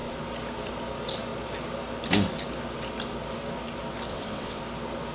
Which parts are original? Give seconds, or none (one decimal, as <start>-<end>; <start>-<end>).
0.0-4.1; 4.6-5.1